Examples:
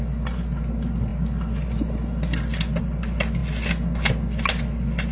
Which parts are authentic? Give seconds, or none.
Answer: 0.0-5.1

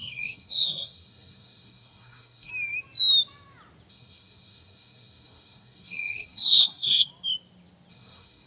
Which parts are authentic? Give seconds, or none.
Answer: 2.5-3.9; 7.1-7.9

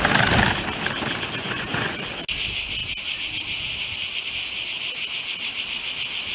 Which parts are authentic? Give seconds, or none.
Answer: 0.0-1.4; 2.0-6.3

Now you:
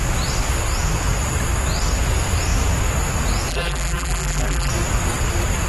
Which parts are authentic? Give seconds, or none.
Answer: 0.0-3.5; 4.7-5.7